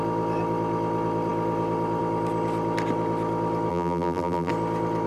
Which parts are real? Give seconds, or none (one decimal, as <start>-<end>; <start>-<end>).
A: 0.0-3.7; 4.5-5.1